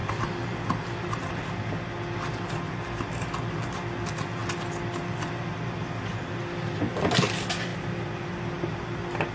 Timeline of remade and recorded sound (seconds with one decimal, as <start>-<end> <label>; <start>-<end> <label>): 0.0-9.3 recorded